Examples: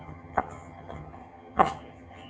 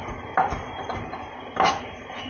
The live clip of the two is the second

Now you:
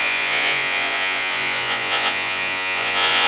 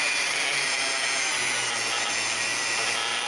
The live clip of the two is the second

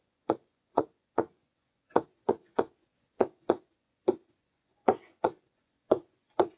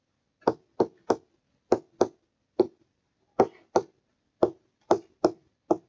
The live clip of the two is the second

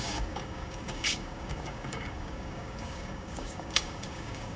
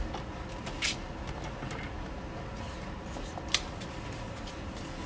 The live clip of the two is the second